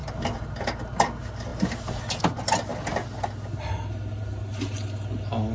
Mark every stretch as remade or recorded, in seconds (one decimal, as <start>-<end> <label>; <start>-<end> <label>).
0.0-5.5 recorded